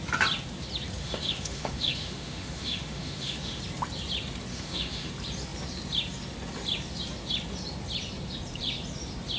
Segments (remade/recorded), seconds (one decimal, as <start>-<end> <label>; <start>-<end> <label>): 0.0-1.0 recorded; 1.0-3.6 remade; 3.6-4.5 recorded; 4.5-5.1 remade; 5.1-9.4 recorded

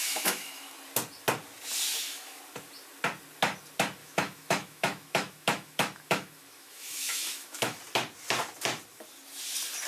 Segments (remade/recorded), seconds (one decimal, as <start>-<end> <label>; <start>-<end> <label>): 0.0-0.7 remade; 0.7-1.9 recorded; 1.9-2.4 remade; 2.4-4.0 recorded; 4.0-7.8 remade; 7.8-9.9 recorded

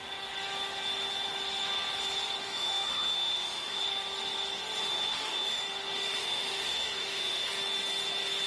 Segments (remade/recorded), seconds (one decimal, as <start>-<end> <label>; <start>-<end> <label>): 0.0-2.4 recorded; 2.4-3.8 remade; 3.8-4.9 recorded; 4.9-5.6 remade; 5.6-6.2 recorded; 6.2-7.5 remade; 7.5-8.5 recorded

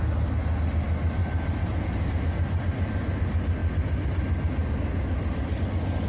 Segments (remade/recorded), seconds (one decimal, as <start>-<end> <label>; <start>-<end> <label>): 0.0-6.1 recorded

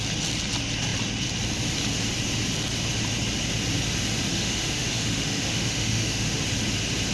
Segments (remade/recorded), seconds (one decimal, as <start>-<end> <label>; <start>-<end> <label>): 0.0-4.3 recorded; 4.3-6.4 remade; 6.4-7.1 recorded

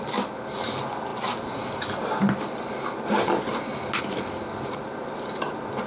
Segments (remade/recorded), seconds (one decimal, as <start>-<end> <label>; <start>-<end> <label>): 0.0-5.9 recorded